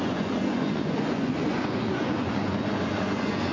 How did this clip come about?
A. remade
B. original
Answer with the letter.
A